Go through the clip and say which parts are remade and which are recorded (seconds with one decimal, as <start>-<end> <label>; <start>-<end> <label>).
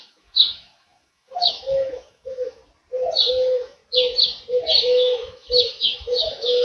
0.0-2.6 remade; 2.6-3.3 recorded; 3.3-3.8 remade; 3.8-4.8 recorded; 4.8-6.6 remade